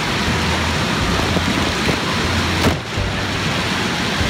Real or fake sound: real